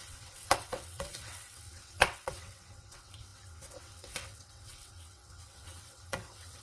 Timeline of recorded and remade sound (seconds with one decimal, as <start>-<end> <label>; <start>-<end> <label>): 0.0-6.6 remade